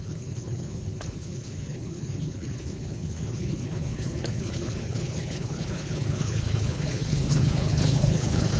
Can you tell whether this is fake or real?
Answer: fake